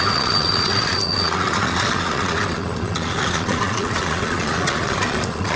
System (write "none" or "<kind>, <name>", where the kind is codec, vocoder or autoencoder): vocoder, Vocos